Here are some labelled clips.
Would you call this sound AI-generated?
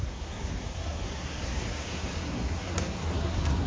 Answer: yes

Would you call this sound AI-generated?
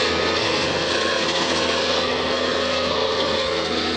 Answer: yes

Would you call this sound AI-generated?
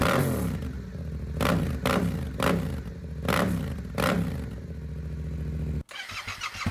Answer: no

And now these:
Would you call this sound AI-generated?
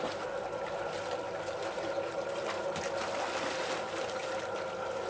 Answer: no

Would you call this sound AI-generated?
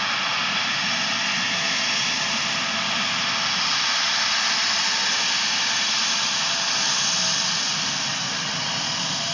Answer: no